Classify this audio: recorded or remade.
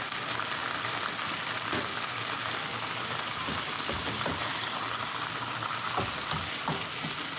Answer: recorded